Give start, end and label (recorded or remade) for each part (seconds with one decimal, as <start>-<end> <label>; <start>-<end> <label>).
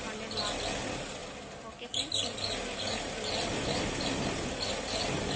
0.0-5.4 recorded